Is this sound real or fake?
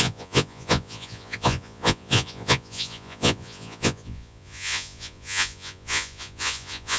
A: fake